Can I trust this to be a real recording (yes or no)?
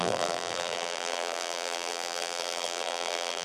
no